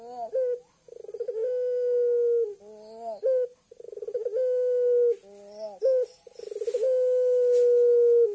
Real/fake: real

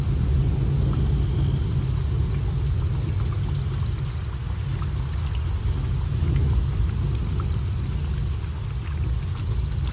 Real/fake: real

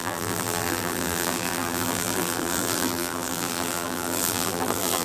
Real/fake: fake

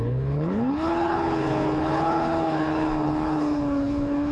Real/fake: fake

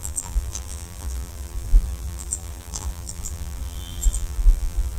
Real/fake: fake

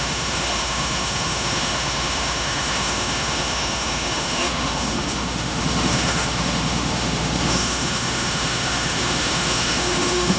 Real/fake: fake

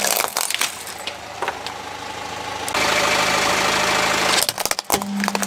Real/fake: real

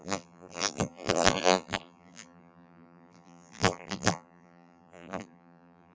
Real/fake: fake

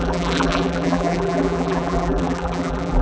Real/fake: fake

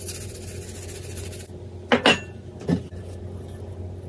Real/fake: real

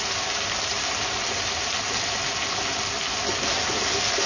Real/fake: real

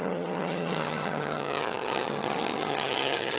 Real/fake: fake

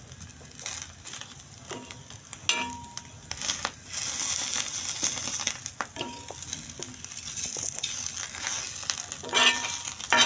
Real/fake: real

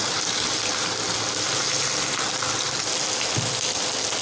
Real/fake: real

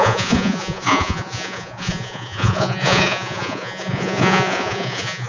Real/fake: fake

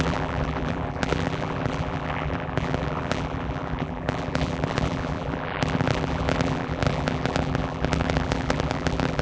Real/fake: fake